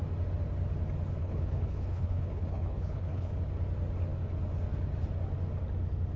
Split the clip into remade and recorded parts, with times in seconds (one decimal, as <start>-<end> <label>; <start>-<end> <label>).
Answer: 0.0-1.2 recorded; 1.2-3.3 remade; 3.3-6.2 recorded